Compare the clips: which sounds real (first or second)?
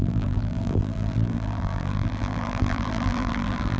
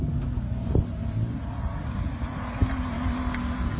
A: second